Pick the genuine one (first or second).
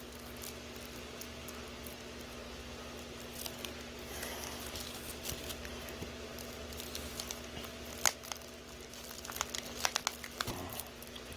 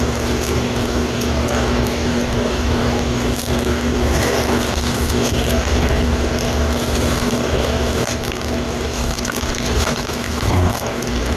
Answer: first